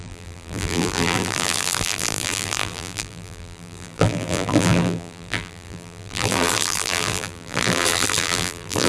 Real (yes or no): no